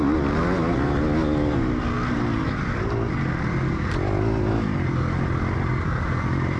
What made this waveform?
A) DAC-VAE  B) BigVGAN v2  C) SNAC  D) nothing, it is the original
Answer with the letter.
D